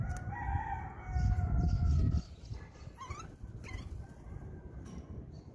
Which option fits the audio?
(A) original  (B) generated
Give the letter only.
A